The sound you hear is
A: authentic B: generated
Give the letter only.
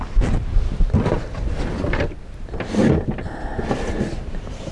A